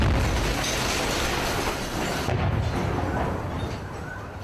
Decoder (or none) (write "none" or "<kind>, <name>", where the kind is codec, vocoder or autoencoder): none